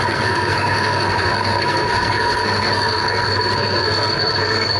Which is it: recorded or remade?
remade